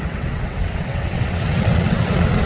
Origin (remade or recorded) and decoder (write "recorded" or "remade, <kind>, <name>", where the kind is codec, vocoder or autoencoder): remade, vocoder, WaveNeXt